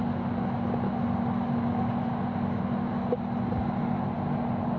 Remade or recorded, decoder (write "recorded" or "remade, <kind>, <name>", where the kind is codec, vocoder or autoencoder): recorded